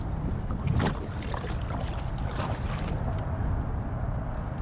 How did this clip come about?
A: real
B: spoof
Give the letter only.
A